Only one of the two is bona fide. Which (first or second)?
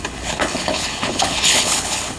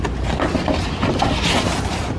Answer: second